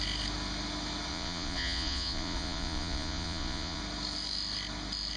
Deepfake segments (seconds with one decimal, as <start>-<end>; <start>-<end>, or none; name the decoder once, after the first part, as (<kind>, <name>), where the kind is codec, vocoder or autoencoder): 1.1-3.8 (vocoder, Vocos)